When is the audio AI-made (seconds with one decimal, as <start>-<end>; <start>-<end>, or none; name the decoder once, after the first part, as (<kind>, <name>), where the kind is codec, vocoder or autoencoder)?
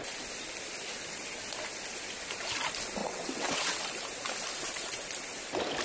3.0-3.8 (vocoder, WaveNeXt)